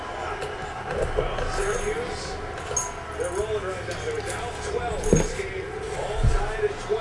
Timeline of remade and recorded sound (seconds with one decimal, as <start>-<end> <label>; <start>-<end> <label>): 0.0-7.0 recorded